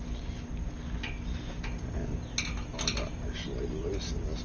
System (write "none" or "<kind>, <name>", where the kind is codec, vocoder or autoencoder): none